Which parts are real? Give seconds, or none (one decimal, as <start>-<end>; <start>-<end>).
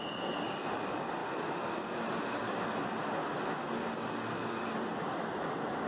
0.0-5.9